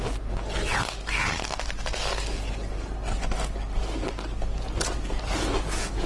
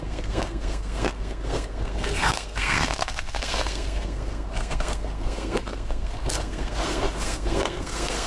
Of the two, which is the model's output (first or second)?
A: second